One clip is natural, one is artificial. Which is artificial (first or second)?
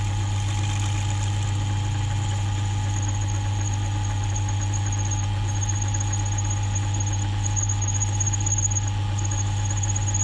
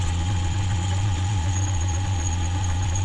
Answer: second